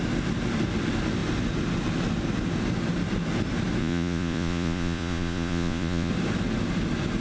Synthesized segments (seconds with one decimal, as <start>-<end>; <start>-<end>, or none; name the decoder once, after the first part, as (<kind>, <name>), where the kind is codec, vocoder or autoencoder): 3.8-6.1 (vocoder, Vocos)